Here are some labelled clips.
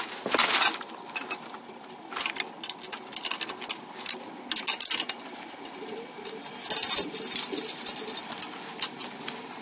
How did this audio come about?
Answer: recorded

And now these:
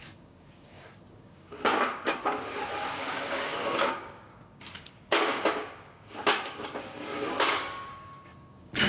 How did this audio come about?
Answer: remade